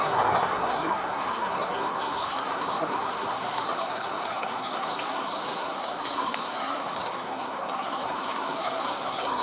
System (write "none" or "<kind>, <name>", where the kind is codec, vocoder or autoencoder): codec, SNAC